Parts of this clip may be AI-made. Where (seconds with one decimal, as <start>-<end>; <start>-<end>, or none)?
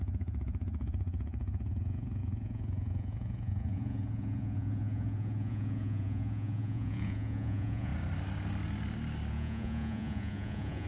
0.0-7.9; 9.3-10.9